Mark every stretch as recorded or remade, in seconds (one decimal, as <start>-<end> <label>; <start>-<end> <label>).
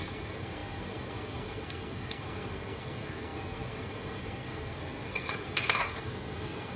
0.0-6.8 remade